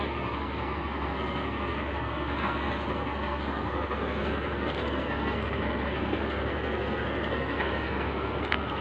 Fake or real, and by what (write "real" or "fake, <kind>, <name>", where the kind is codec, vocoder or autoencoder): fake, codec, SNAC